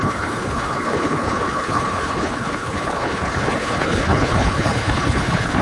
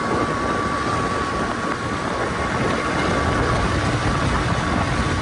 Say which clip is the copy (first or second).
first